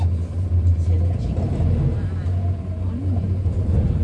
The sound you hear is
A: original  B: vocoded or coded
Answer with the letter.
A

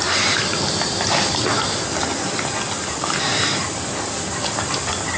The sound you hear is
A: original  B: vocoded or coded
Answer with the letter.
A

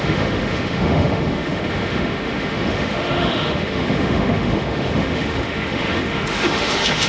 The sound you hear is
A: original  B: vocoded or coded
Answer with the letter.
B